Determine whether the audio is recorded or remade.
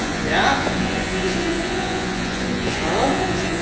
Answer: remade